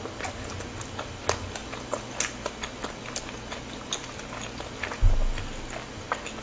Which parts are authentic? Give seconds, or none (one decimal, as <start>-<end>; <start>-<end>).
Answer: 0.0-1.6; 2.2-2.8; 4.2-6.4